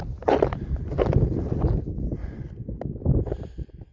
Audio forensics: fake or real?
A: real